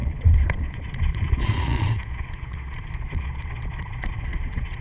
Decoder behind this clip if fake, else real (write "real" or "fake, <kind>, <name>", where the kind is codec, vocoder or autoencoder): fake, vocoder, Vocos